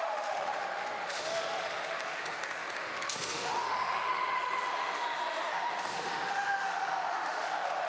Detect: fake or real fake